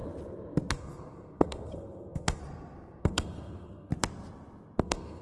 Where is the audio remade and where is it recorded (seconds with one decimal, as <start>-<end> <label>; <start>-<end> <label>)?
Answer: 0.0-0.7 recorded; 0.7-2.4 remade; 2.4-3.0 recorded; 3.0-3.9 remade; 3.9-4.8 recorded; 4.8-5.2 remade